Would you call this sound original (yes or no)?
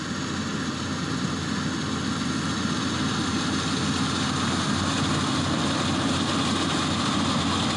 yes